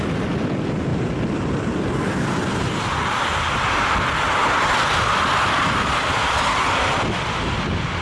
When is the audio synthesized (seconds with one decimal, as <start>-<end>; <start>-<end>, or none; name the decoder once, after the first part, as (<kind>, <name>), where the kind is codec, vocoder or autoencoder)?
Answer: none